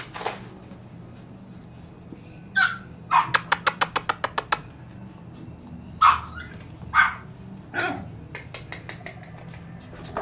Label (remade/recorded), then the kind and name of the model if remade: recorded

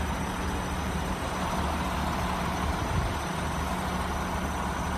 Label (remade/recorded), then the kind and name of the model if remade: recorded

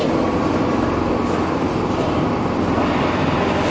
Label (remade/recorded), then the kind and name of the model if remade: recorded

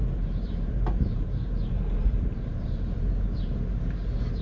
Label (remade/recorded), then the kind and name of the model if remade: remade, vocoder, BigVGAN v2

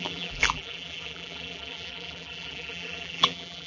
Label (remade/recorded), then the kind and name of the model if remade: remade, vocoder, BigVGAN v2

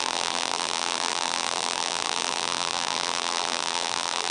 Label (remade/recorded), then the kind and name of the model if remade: remade, vocoder, BigVGAN v2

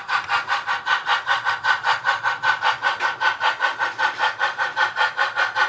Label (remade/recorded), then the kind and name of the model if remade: remade, vocoder, BigVGAN v2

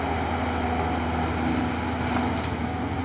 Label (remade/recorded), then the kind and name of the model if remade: recorded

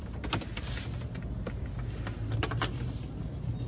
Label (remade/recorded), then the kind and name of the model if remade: recorded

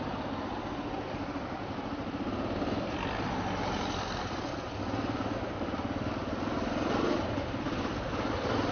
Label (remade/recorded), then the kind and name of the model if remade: recorded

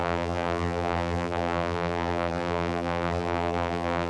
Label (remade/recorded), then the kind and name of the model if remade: remade, vocoder, BigVGAN v2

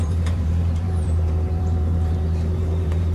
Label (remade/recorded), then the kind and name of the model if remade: remade, vocoder, BigVGAN v2